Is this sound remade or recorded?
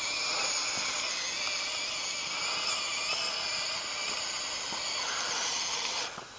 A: recorded